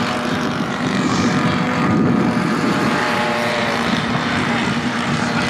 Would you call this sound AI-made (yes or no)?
yes